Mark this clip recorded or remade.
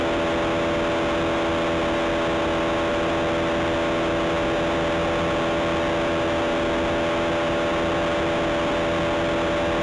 recorded